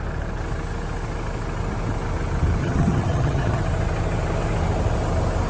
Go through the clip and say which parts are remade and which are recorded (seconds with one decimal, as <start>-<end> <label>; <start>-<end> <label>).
0.0-2.6 recorded; 2.6-3.6 remade; 3.6-5.5 recorded